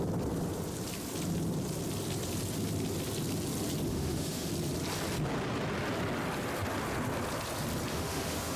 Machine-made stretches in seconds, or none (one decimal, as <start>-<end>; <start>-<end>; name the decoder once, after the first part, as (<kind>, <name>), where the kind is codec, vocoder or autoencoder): 3.9-4.5 (autoencoder, DAC-VAE); 7.9-8.6